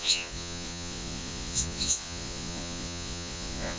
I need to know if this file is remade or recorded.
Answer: remade